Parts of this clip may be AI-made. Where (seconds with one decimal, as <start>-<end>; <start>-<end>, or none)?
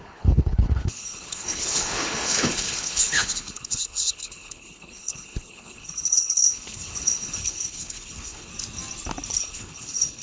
0.0-8.5; 9.4-10.2